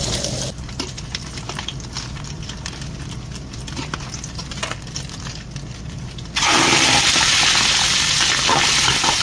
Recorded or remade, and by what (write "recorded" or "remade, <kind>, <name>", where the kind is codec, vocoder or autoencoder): recorded